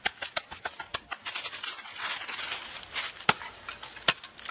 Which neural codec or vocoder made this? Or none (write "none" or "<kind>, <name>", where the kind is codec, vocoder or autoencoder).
none